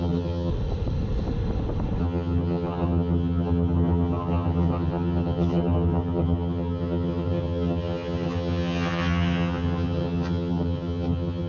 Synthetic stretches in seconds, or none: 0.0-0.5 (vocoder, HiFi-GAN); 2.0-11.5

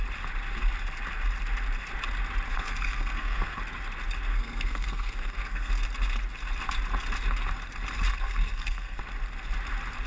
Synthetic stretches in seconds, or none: 2.5-3.6 (codec, SNAC); 4.3-5.7; 8.1-9.0

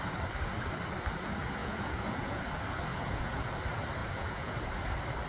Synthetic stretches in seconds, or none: 1.6-2.4 (vocoder, Vocos); 2.9-3.5; 4.0-4.6

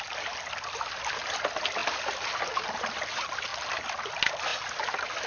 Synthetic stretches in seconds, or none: none

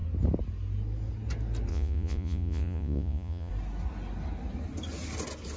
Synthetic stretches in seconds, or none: 1.7-3.5 (vocoder, Vocos)

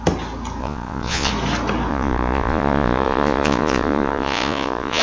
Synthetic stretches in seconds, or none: 0.6-1.3 (vocoder, Vocos); 1.9-5.0